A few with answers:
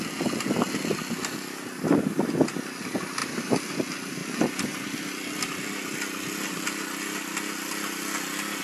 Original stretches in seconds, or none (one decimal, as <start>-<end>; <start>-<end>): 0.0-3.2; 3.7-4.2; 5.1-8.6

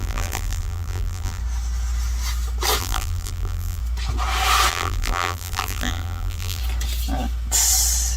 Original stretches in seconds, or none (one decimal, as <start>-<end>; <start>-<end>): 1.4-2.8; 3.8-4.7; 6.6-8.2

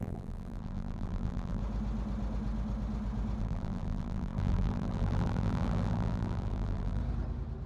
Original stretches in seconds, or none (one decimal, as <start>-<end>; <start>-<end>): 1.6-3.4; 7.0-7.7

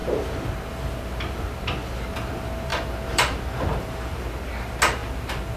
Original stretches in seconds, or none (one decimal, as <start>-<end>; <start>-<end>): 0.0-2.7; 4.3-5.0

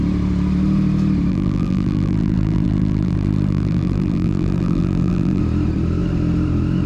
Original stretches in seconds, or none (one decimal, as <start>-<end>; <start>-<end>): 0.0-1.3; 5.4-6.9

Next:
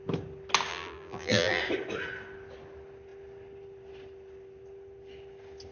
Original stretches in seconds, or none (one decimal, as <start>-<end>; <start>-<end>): 0.0-0.7; 1.6-5.7